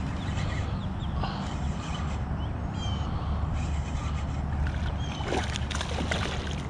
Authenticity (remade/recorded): recorded